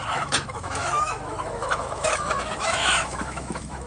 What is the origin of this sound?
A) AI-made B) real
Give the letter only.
A